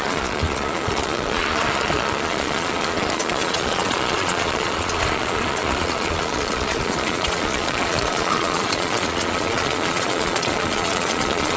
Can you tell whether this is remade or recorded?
remade